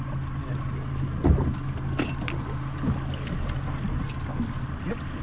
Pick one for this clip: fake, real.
real